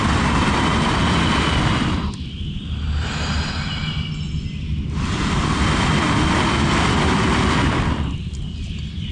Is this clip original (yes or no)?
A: yes